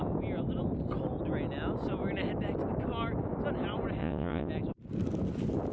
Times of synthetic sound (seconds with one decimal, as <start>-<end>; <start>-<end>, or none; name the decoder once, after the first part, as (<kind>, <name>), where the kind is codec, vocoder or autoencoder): 4.0-4.5 (vocoder, WaveNeXt)